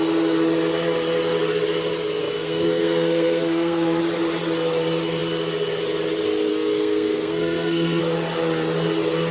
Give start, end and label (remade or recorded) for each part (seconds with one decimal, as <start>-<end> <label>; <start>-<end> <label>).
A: 0.0-2.2 recorded; 2.2-4.0 remade; 4.0-6.5 recorded; 6.5-8.0 remade; 8.0-9.3 recorded